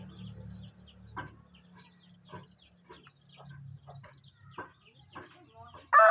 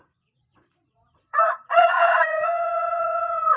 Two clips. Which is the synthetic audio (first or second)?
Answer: second